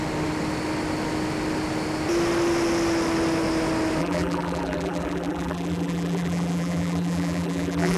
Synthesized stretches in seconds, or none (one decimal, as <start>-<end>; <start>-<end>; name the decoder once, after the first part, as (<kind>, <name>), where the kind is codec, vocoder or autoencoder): 4.0-8.0 (vocoder, BigVGAN v2)